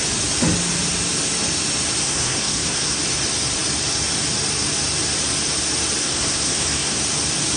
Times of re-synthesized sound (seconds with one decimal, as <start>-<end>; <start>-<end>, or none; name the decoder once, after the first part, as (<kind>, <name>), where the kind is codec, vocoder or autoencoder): 2.0-3.0 (codec, SNAC); 6.0-7.0